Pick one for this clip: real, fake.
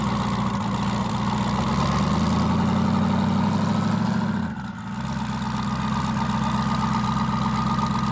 real